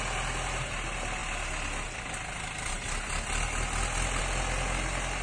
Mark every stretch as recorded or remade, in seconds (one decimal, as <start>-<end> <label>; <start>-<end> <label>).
0.0-5.2 recorded